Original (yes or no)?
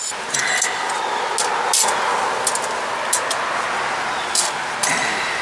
yes